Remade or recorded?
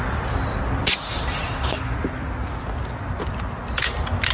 recorded